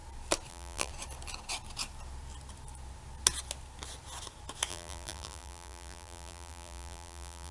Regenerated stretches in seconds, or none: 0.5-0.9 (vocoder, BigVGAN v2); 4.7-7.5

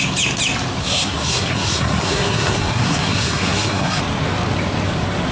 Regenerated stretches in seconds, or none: 0.8-4.0 (codec, SNAC)

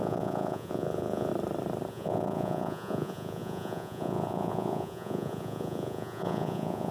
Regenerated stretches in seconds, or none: 0.0-1.3 (vocoder, Vocos); 1.9-6.9

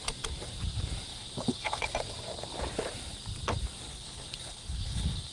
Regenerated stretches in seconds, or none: 1.1-1.9 (codec, HILCodec); 3.9-5.3